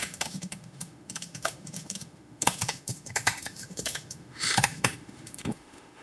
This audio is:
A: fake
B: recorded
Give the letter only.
A